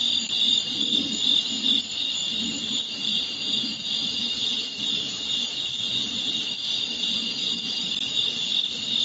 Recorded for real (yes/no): yes